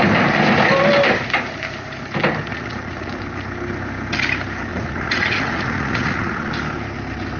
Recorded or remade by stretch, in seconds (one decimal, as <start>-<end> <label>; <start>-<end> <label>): 0.0-2.5 recorded; 2.5-3.2 remade; 3.2-4.7 recorded; 4.7-6.5 remade; 6.5-7.4 recorded